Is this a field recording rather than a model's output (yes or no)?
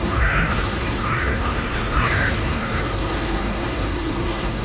no